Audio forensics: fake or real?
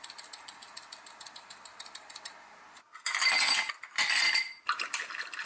real